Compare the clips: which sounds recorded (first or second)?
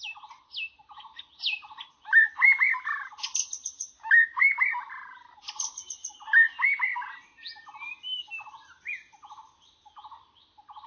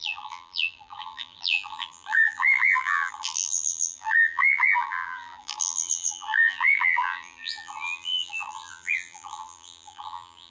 first